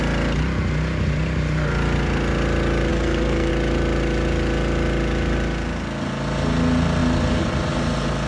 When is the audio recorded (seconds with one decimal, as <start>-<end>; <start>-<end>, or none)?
0.0-2.9; 3.5-8.3